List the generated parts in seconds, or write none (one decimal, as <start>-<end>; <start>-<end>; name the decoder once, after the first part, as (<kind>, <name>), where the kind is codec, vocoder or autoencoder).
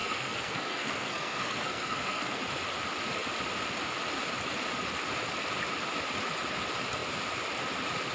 0.0-2.4 (codec, SNAC)